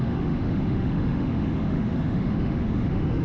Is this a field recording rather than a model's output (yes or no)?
no